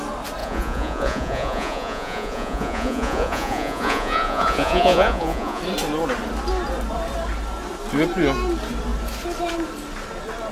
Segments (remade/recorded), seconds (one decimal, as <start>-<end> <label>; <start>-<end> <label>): 0.0-0.4 recorded; 0.4-5.6 remade; 5.6-10.5 recorded